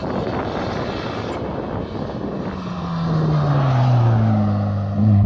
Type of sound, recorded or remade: recorded